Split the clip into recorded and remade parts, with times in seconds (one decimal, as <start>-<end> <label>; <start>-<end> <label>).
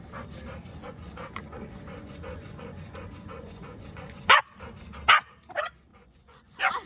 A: 0.0-0.7 recorded; 0.7-4.4 remade; 4.4-5.9 recorded; 5.9-6.9 remade